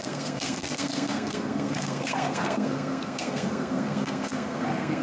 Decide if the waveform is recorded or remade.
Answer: remade